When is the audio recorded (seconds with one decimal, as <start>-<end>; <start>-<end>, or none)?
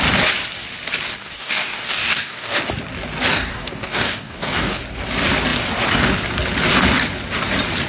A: 0.0-1.2; 2.6-3.3; 4.8-7.9